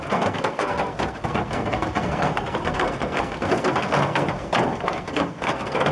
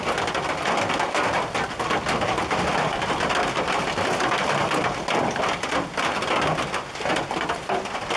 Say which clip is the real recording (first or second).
second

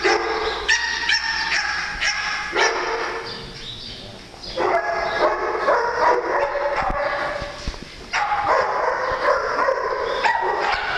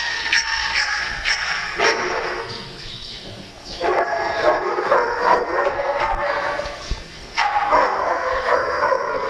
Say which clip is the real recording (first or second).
first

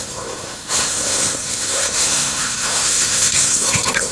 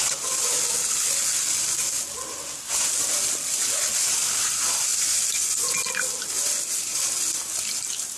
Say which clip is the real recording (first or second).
second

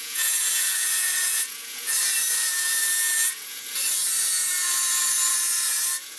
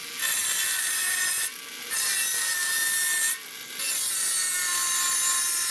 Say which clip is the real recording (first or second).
second